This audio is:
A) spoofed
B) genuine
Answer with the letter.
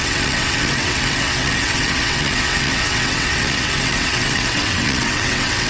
A